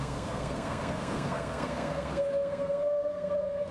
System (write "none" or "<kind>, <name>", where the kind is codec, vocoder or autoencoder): codec, SNAC